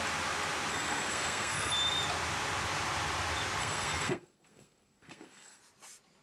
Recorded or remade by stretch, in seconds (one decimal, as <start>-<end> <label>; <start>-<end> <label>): 0.0-0.7 recorded; 0.7-1.7 remade; 1.7-3.6 recorded; 3.6-5.6 remade; 5.6-6.2 recorded